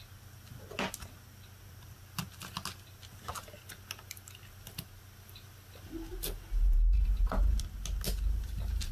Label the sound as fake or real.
real